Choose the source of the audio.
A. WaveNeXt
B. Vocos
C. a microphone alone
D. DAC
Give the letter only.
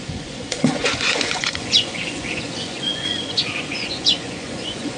B